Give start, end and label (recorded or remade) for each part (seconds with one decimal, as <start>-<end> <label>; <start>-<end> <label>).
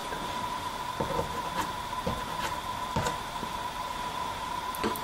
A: 0.0-3.0 recorded; 3.0-5.0 remade